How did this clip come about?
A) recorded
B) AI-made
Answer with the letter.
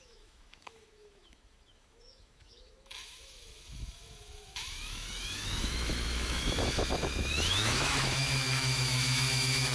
B